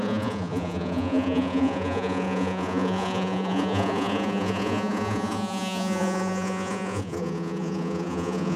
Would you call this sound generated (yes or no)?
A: yes